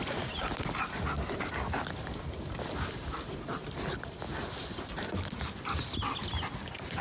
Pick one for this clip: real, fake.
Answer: real